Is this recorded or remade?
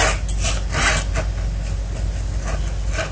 recorded